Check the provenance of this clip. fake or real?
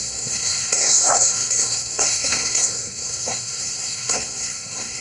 fake